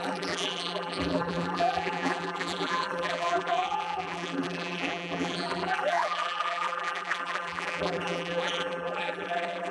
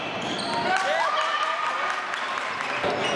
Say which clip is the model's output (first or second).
first